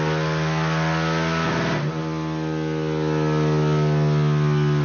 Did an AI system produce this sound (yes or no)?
no